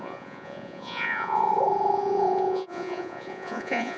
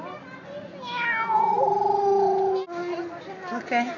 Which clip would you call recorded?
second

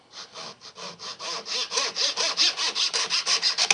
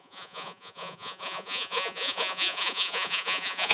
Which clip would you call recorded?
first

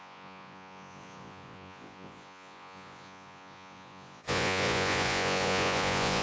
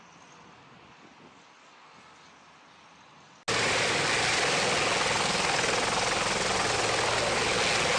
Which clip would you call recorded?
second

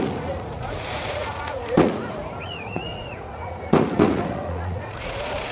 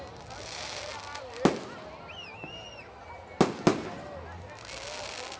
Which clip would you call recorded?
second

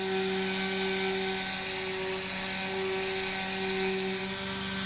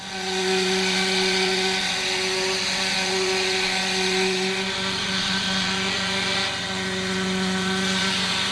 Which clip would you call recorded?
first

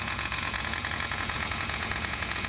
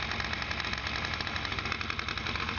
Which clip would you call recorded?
second